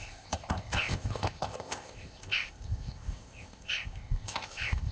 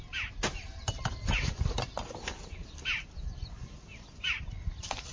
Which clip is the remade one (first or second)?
first